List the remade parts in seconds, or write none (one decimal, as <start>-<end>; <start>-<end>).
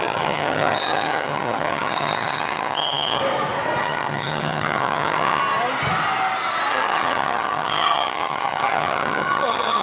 0.0-3.2; 3.8-5.4; 6.7-9.8